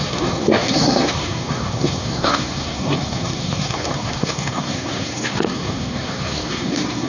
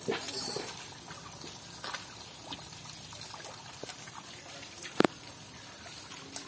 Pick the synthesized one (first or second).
first